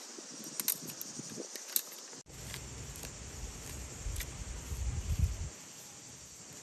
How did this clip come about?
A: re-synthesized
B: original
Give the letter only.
B